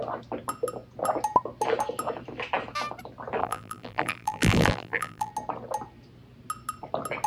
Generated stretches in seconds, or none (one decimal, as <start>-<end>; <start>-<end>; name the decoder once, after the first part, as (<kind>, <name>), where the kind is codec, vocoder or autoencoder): 3.4-5.3 (vocoder, BigVGAN v2)